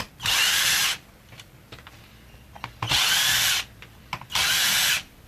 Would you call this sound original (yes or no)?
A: yes